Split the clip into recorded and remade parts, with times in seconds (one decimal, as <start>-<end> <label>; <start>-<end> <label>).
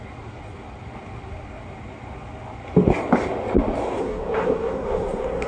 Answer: 0.0-4.0 recorded; 4.0-5.5 remade